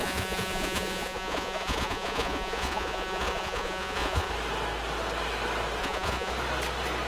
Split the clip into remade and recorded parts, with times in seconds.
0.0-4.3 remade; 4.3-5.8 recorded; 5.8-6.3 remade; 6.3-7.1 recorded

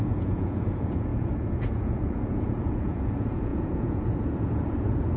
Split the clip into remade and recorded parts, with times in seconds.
0.0-5.2 remade

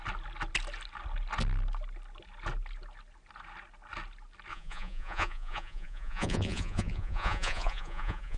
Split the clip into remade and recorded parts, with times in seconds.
0.0-4.5 recorded; 4.5-8.4 remade

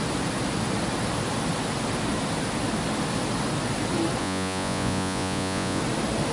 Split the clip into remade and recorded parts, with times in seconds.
0.0-4.2 recorded; 4.2-5.8 remade; 5.8-6.3 recorded

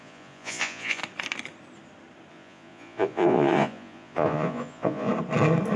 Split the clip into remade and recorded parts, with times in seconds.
0.0-1.0 remade; 1.0-2.3 recorded; 2.3-5.1 remade; 5.1-5.8 recorded

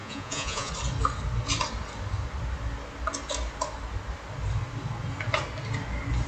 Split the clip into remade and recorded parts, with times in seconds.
0.0-0.7 remade; 0.7-6.3 recorded

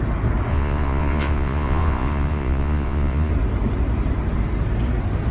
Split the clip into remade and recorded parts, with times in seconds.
0.0-0.5 recorded; 0.5-3.3 remade; 3.3-5.3 recorded